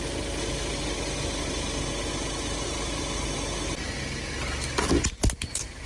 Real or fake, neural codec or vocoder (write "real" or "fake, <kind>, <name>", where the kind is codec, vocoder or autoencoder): real